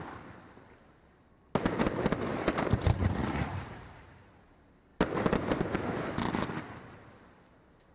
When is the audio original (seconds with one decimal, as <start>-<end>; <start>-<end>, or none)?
0.0-3.0; 4.3-7.9

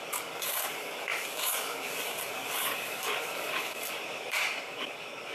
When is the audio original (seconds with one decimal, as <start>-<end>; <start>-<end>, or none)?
none

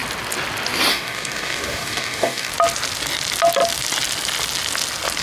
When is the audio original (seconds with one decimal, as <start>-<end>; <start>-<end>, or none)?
0.0-0.9; 2.5-5.2